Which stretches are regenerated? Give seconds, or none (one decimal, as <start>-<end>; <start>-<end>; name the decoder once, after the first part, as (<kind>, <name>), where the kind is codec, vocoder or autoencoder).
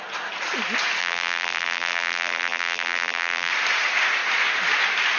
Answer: 1.0-3.5 (vocoder, BigVGAN v2)